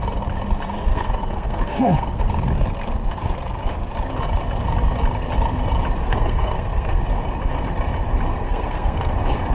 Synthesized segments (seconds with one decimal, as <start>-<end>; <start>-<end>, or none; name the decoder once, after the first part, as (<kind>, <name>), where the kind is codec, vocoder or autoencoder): 0.9-2.2 (codec, SNAC); 6.0-7.0; 8.3-9.1